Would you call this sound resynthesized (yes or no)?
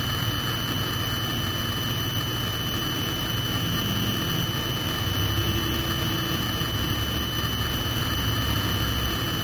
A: no